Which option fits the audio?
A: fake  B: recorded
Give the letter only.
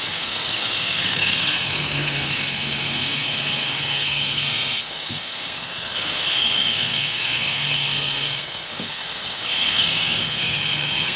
A